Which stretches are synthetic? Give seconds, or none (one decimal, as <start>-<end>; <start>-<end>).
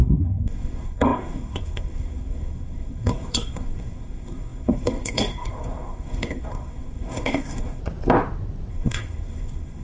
0.0-7.8; 8.7-9.8